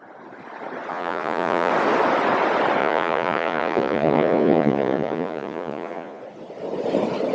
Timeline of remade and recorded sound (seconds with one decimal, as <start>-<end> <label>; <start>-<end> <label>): 0.0-0.9 recorded; 0.9-1.7 remade; 1.7-2.8 recorded; 2.8-6.2 remade; 6.2-7.3 recorded